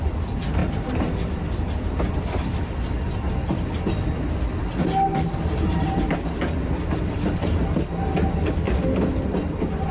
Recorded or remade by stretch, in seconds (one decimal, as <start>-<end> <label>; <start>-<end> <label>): 0.0-0.6 recorded; 0.6-1.1 remade; 1.1-9.9 recorded